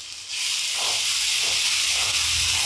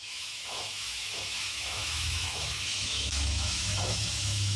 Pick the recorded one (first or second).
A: first